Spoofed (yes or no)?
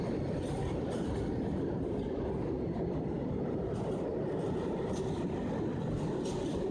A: no